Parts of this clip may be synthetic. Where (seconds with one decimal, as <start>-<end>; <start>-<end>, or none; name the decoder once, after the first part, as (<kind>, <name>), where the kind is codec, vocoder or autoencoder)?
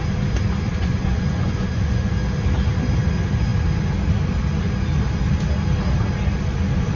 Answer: 0.7-2.1 (vocoder, Vocos)